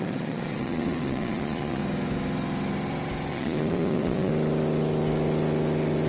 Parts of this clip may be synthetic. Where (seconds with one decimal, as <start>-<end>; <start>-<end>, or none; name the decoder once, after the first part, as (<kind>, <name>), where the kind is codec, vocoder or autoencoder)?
0.0-1.8 (vocoder, Vocos); 3.3-4.3